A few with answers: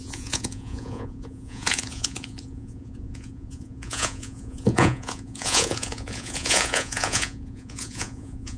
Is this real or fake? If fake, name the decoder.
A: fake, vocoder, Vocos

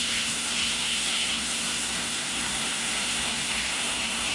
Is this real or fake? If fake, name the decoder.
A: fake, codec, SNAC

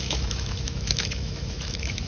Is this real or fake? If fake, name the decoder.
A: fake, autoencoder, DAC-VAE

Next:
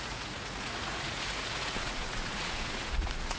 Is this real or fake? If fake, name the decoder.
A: fake, vocoder, Vocos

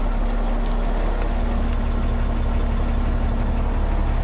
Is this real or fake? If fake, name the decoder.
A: real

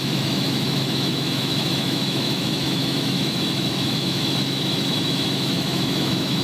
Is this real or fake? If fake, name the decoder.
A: fake, autoencoder, DAC-VAE